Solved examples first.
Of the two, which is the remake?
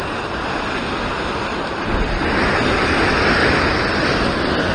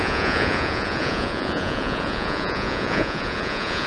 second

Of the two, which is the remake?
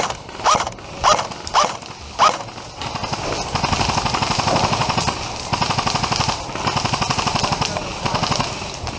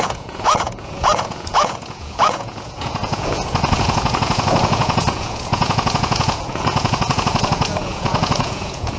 second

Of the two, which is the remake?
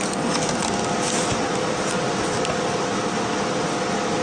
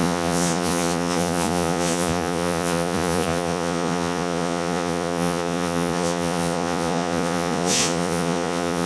second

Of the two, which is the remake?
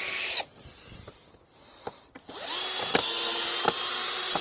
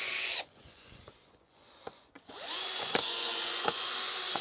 second